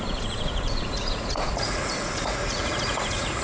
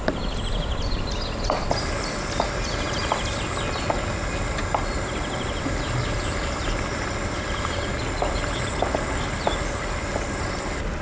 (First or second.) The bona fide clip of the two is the second